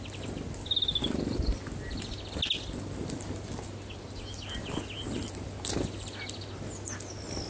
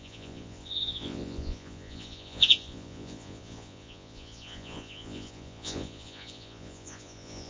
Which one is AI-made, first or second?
second